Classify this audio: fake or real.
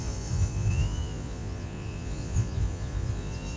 fake